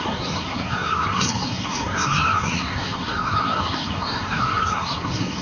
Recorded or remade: remade